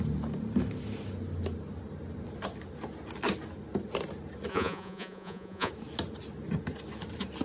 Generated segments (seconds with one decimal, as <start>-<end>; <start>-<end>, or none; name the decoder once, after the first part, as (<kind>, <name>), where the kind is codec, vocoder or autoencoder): 4.5-5.7 (vocoder, Vocos)